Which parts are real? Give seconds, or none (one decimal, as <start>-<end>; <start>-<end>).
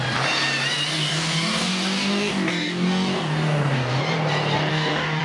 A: 0.0-0.9; 4.0-4.7